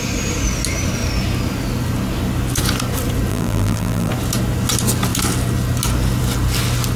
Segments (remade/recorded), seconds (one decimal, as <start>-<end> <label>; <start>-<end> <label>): 0.0-3.3 recorded; 3.3-4.1 remade; 4.1-7.0 recorded